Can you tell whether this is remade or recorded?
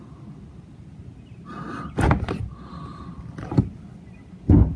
recorded